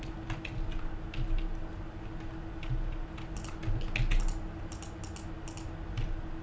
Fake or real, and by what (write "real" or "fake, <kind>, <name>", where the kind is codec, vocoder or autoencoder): real